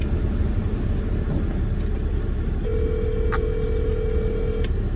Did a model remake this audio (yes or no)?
no